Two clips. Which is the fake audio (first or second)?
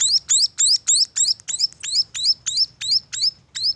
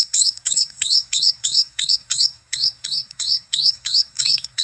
second